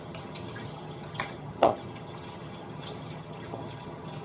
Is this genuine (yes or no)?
no